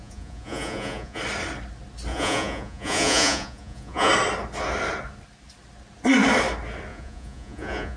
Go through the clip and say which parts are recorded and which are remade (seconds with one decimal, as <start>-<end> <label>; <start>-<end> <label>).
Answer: 0.0-1.2 remade; 1.2-2.1 recorded; 2.1-4.1 remade; 4.1-6.9 recorded; 6.9-8.0 remade